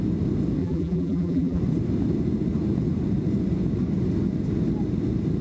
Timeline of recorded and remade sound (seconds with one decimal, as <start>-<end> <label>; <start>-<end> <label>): 0.0-0.6 recorded; 0.6-1.6 remade; 1.6-5.4 recorded